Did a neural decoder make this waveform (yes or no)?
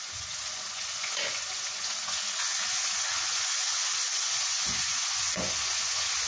yes